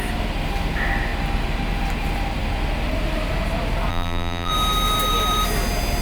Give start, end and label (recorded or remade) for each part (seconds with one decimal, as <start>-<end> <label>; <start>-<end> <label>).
0.0-3.9 recorded; 3.9-4.5 remade; 4.5-6.0 recorded